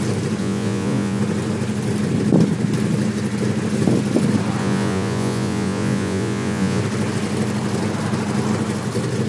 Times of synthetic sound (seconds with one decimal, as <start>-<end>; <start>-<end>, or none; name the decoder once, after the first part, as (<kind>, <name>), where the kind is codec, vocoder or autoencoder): 0.4-1.2 (vocoder, Vocos); 4.6-6.8